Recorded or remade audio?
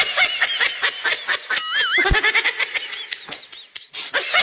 recorded